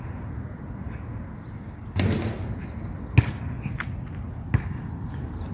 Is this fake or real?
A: real